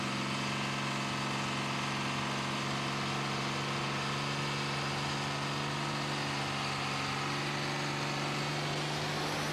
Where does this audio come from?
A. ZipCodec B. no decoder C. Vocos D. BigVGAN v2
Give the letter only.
B